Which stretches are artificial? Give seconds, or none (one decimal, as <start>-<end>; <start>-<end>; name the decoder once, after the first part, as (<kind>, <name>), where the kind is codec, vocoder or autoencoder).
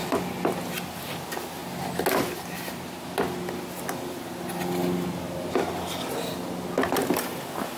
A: none